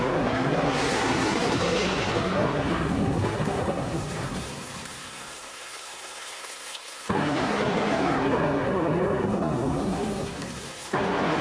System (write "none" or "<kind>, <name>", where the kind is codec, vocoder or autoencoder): codec, SNAC